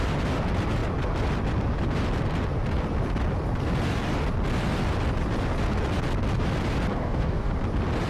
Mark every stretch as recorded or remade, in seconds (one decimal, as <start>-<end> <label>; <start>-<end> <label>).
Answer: 0.0-6.9 recorded; 6.9-7.5 remade; 7.5-8.1 recorded